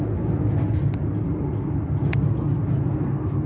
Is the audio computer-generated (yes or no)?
no